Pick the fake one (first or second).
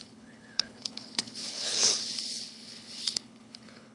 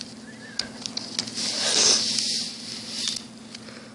first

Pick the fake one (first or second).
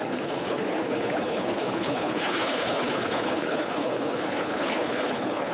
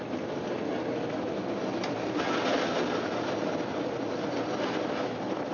first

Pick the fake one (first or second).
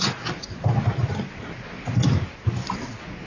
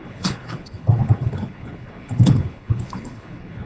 second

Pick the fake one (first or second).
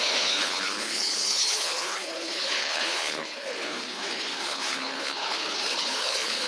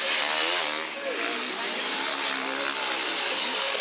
first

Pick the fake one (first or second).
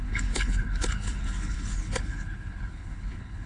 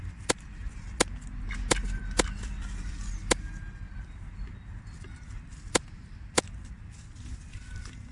first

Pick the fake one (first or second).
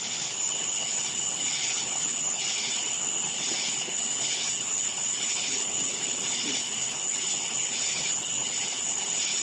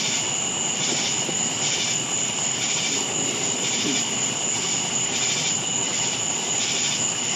first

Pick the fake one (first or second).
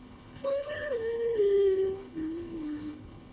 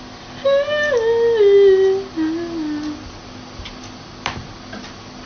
first